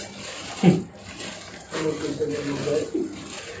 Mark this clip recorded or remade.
recorded